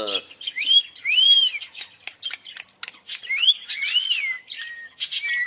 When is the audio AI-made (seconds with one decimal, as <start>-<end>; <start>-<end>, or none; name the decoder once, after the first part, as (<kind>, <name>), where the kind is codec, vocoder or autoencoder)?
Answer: none